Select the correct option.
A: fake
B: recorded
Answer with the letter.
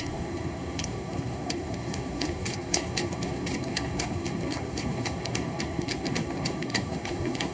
A